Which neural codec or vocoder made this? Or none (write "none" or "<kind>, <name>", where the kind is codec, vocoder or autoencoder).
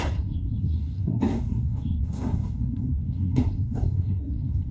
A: codec, SNAC